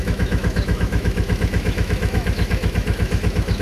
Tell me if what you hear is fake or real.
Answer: fake